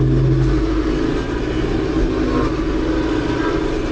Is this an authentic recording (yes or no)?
yes